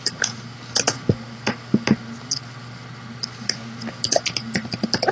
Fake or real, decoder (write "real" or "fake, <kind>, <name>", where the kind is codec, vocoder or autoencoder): real